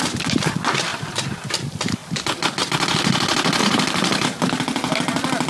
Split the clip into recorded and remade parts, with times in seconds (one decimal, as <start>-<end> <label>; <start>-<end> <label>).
0.0-0.9 recorded; 0.9-1.5 remade; 1.5-3.6 recorded; 3.6-4.6 remade; 4.6-5.5 recorded

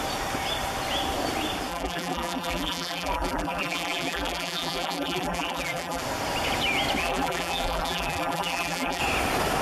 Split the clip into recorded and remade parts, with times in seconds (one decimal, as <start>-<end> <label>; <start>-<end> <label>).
0.0-1.7 recorded; 1.7-6.0 remade; 6.0-7.0 recorded; 7.0-9.0 remade; 9.0-9.6 recorded

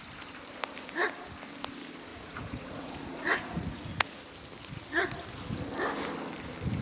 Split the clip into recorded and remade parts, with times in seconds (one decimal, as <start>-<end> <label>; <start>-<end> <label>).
0.0-2.1 recorded; 2.1-4.2 remade; 4.2-6.8 recorded

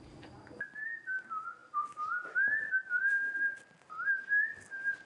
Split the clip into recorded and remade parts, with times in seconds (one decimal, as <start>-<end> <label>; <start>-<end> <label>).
0.0-5.1 recorded